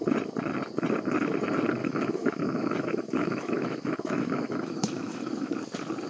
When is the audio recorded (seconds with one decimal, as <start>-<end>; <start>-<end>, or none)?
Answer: 0.0-1.8; 5.5-6.1